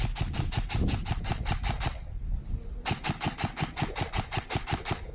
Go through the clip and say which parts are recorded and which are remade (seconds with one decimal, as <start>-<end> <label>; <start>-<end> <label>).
0.0-5.1 recorded